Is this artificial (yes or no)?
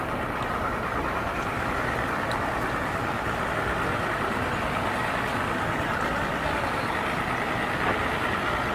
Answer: no